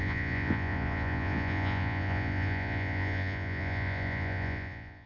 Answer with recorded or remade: remade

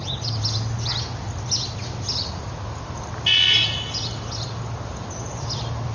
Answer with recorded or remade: recorded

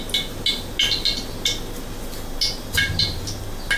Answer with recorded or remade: recorded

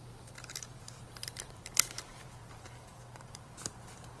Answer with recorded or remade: remade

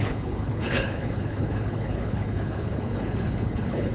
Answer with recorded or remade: remade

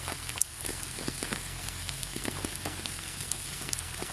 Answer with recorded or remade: remade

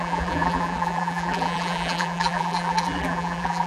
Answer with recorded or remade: remade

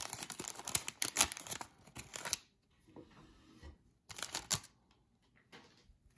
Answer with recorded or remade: recorded